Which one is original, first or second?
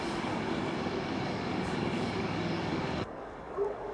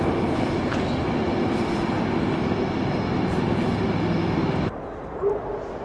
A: second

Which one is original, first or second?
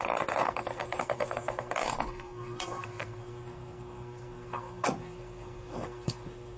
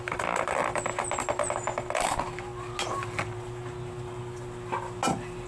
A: second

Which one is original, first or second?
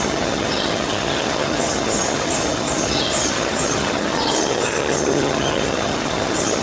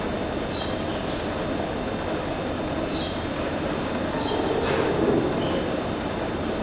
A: second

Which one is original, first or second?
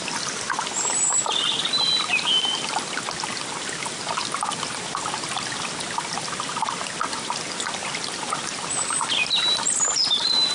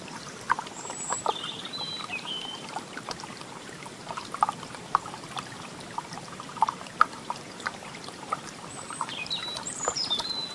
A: first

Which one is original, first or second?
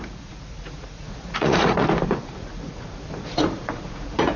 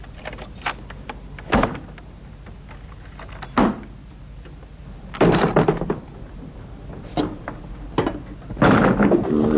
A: second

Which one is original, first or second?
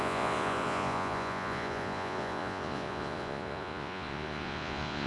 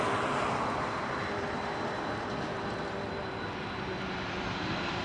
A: second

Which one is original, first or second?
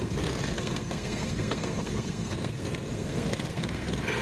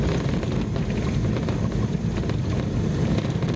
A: second